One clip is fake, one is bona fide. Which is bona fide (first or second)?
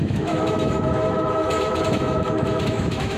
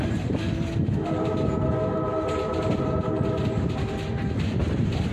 second